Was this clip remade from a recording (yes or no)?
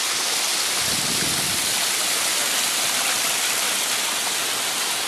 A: no